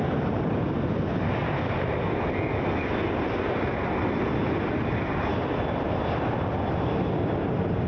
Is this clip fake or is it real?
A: real